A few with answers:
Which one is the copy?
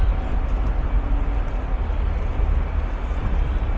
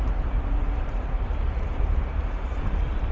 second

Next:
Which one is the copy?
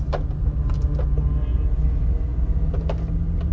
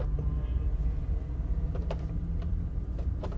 second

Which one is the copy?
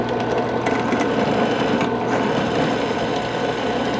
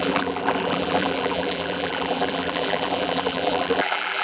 second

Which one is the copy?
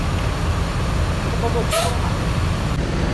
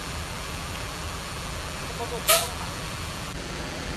second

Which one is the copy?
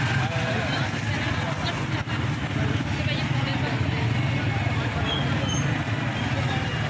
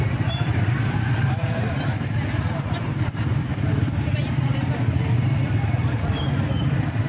second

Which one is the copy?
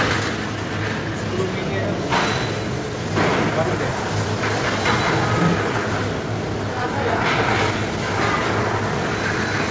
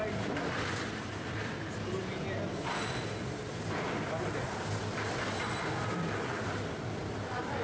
second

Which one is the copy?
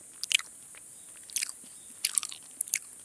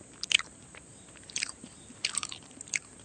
second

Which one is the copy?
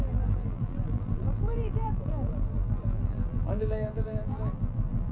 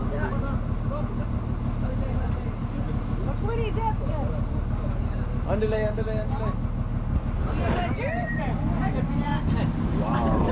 first